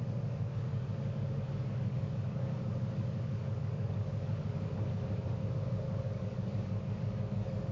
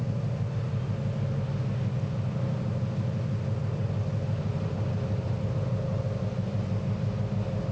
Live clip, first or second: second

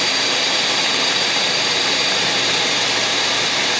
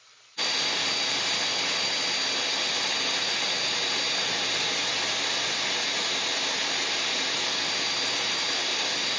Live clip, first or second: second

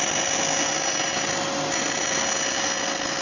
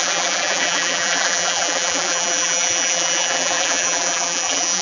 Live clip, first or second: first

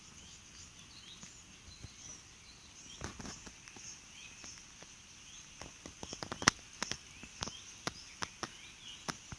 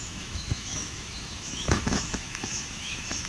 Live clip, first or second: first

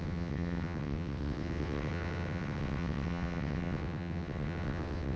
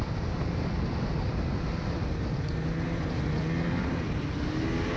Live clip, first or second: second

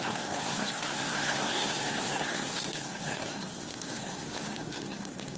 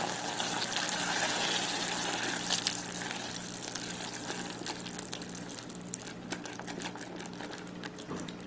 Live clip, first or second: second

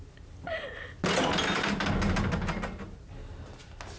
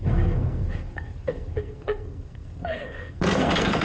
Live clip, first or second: first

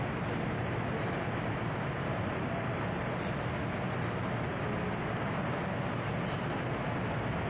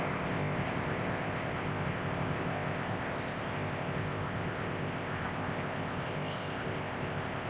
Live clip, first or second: first